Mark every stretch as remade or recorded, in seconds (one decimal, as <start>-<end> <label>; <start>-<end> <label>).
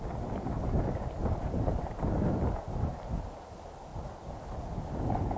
0.0-5.4 recorded